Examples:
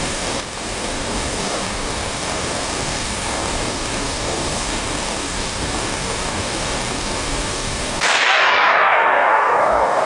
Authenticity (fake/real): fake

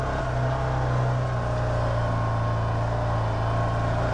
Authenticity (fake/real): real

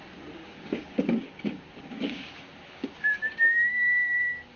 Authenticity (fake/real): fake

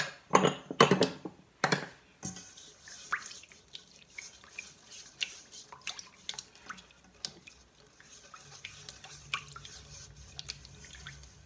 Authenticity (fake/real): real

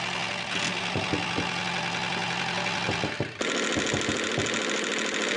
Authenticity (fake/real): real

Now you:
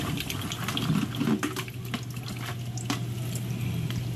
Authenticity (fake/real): real